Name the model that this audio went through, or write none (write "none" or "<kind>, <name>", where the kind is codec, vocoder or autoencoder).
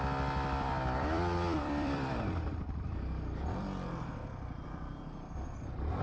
vocoder, BigVGAN v2